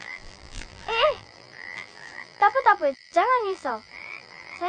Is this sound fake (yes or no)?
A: yes